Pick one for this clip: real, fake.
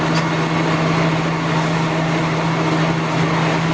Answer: real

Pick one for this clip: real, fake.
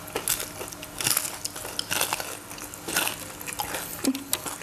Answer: real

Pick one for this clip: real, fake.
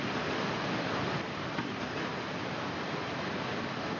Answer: fake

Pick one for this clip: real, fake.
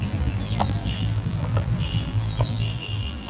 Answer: fake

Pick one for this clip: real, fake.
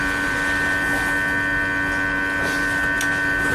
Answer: real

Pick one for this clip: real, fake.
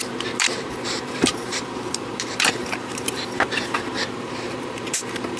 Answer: fake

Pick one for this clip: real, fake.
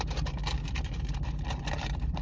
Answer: fake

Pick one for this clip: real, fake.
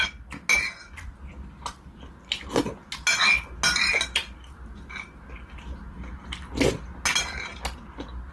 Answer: real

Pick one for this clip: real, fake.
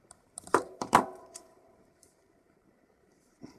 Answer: fake